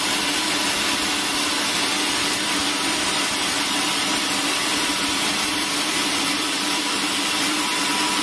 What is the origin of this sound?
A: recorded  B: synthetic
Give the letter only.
A